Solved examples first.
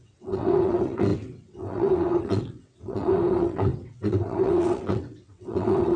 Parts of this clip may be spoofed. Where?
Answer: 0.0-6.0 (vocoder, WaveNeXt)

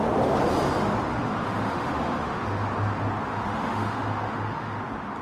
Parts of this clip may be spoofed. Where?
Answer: 1.1-2.6 (autoencoder, DAC-VAE); 3.3-4.8